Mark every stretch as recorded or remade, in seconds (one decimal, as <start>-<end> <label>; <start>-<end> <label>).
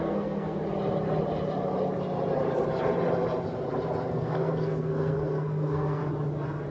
0.0-0.6 remade; 0.6-4.1 recorded; 4.1-6.0 remade; 6.0-6.7 recorded